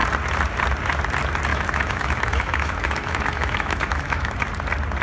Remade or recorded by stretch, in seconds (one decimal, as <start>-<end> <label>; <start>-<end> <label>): 0.0-1.5 recorded; 1.5-4.4 remade; 4.4-5.0 recorded